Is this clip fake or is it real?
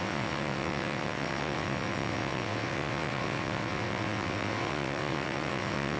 fake